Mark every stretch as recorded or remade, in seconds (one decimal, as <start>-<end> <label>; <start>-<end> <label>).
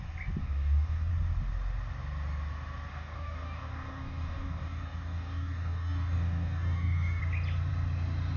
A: 0.0-0.4 recorded; 0.4-1.1 remade; 1.1-2.9 recorded; 2.9-7.2 remade; 7.2-8.4 recorded